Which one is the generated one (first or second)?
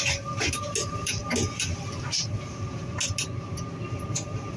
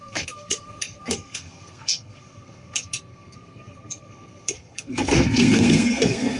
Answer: second